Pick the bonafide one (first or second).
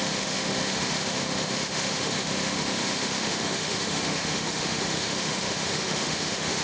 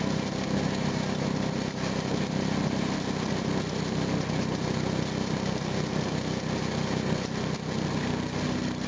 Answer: second